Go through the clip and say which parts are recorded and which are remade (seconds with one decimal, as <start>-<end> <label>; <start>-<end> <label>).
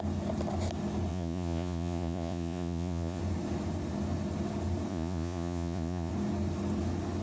0.0-1.1 recorded; 1.1-3.2 remade; 3.2-4.9 recorded; 4.9-6.1 remade; 6.1-7.2 recorded